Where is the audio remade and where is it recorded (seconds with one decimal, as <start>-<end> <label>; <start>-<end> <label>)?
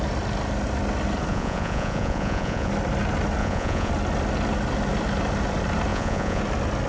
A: 0.0-1.3 recorded; 1.3-2.7 remade; 2.7-3.4 recorded; 3.4-3.9 remade; 3.9-5.9 recorded; 5.9-6.4 remade; 6.4-6.9 recorded